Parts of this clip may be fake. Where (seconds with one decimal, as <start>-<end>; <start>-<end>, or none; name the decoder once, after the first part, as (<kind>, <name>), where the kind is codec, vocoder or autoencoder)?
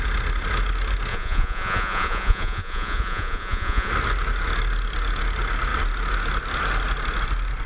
1.1-3.9 (vocoder, Vocos)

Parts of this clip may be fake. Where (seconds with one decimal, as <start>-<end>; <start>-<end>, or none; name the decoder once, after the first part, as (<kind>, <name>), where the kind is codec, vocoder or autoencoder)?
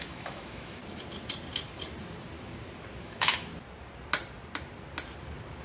0.0-0.8 (autoencoder, DAC-VAE); 3.0-3.5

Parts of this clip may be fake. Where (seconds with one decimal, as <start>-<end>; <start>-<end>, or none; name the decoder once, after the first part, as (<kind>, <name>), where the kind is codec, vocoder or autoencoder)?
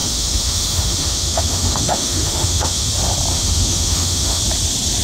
0.0-2.9 (autoencoder, DAC-VAE); 3.3-4.4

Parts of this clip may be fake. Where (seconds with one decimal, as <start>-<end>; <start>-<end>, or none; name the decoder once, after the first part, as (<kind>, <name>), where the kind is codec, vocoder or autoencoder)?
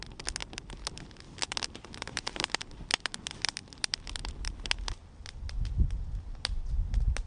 none